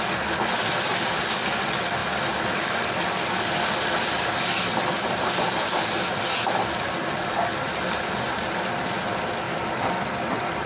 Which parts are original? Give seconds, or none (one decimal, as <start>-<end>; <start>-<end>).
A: 0.0-10.7